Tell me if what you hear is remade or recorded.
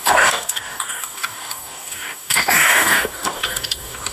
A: remade